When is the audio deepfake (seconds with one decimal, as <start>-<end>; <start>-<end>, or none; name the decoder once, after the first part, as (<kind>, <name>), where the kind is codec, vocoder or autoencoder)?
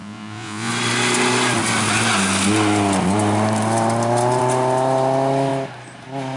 0.0-0.7 (vocoder, Vocos)